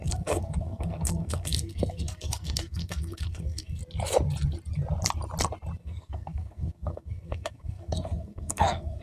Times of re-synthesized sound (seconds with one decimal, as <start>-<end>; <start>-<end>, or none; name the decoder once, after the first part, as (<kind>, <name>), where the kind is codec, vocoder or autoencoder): 0.0-3.8 (codec, SNAC); 5.8-9.0